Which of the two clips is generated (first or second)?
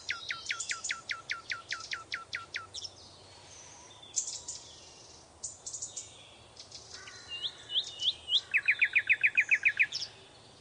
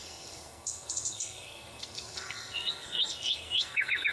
second